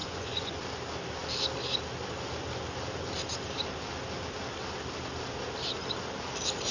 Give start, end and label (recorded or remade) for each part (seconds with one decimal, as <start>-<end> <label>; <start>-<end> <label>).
0.0-0.6 remade; 0.6-6.7 recorded